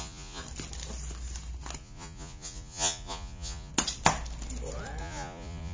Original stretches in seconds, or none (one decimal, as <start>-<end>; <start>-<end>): 0.4-1.8; 3.7-5.0